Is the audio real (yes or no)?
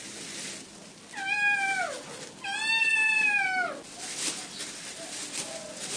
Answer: yes